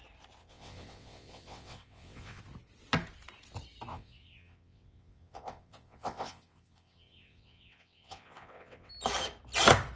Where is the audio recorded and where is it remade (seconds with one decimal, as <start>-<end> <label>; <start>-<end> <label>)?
0.0-0.4 recorded; 0.4-2.4 remade; 2.4-3.9 recorded; 3.9-8.9 remade; 8.9-10.0 recorded